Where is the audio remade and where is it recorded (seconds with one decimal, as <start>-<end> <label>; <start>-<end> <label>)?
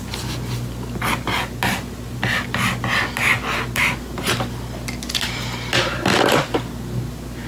0.0-7.5 recorded